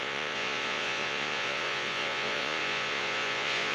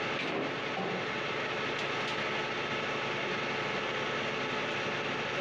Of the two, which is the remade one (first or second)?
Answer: first